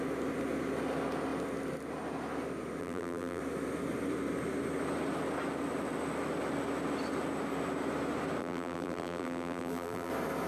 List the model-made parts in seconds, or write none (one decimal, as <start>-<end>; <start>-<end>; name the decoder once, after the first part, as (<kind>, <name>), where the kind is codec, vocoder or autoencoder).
2.8-3.4 (vocoder, BigVGAN v2); 8.4-10.1